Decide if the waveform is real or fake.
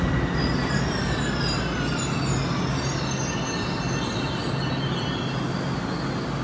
real